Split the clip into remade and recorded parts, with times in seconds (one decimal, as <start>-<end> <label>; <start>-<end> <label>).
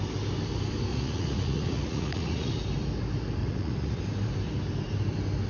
0.0-0.9 recorded; 0.9-2.5 remade; 2.5-3.4 recorded; 3.4-4.0 remade; 4.0-5.5 recorded